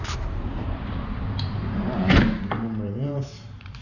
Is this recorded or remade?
remade